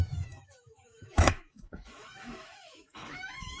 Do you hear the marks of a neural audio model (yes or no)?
yes